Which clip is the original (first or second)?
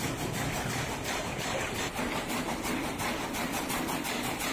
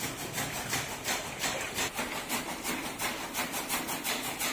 second